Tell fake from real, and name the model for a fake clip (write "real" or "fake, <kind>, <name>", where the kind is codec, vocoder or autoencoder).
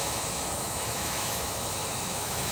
fake, autoencoder, DAC-VAE